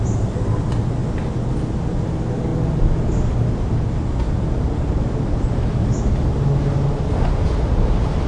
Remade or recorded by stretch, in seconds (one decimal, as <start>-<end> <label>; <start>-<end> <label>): 0.0-8.3 recorded